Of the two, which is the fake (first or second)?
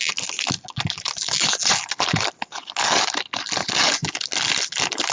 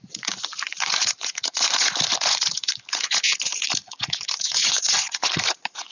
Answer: second